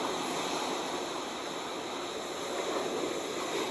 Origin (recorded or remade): recorded